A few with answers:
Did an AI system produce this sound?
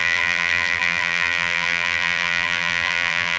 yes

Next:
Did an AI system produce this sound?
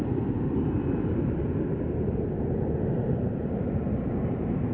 no